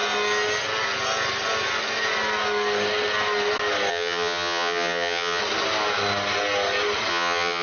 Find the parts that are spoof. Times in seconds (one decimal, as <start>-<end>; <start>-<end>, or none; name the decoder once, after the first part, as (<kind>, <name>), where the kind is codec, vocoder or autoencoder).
3.9-5.4 (vocoder, HiFi-GAN); 7.1-7.6